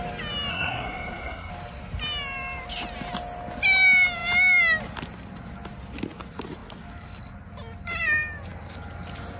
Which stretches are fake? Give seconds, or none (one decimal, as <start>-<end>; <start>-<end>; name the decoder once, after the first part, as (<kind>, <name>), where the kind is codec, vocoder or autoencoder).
0.5-1.5 (codec, SNAC)